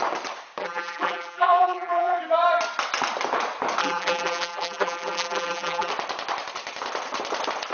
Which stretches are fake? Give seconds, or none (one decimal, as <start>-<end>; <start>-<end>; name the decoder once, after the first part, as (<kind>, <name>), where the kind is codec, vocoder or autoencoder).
0.6-2.2 (vocoder, BigVGAN v2); 3.8-5.9